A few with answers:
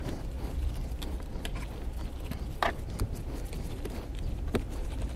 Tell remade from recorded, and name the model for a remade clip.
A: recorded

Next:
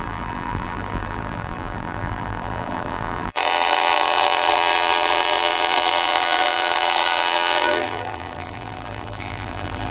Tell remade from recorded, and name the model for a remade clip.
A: remade, vocoder, BigVGAN v2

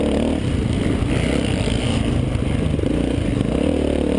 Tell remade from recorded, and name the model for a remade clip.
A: recorded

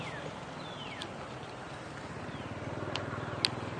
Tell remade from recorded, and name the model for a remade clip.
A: remade, vocoder, BigVGAN v2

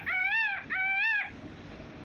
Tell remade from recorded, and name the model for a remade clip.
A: recorded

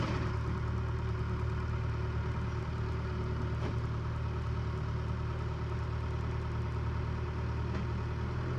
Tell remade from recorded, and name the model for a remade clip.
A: recorded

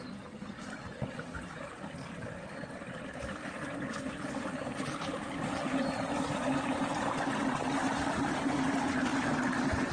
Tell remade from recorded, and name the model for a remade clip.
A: remade, vocoder, BigVGAN v2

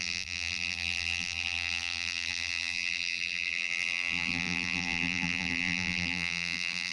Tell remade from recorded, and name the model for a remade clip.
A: remade, vocoder, BigVGAN v2